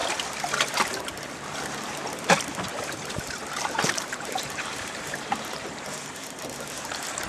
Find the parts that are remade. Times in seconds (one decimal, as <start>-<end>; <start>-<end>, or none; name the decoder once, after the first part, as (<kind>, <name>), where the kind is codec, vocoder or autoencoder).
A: 2.7-7.3 (vocoder, BigVGAN v2)